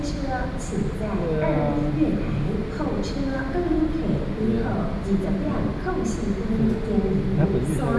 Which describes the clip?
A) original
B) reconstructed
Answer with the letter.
A